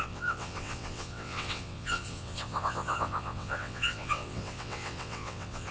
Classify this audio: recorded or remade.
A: remade